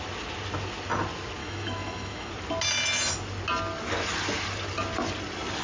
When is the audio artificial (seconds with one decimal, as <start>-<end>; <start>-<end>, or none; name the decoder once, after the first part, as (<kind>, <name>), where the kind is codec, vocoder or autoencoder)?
1.4-2.3 (autoencoder, DAC-VAE)